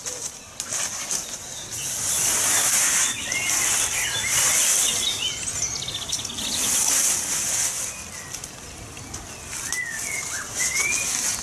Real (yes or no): yes